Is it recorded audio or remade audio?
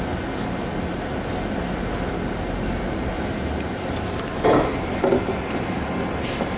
recorded